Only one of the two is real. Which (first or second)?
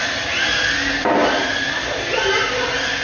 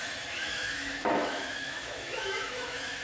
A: first